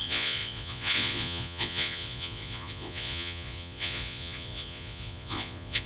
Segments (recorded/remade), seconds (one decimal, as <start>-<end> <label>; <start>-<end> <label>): 0.0-5.9 remade